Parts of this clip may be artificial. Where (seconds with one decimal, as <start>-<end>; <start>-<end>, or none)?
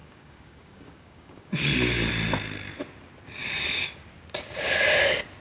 0.0-2.1; 3.4-4.1